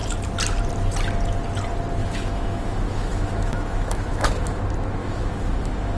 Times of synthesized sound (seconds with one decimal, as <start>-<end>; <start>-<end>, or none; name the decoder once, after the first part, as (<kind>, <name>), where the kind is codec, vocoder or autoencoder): 2.0-4.6 (autoencoder, DAC-VAE); 5.0-6.0